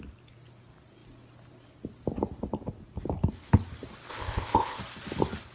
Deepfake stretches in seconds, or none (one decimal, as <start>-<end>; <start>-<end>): 4.1-4.8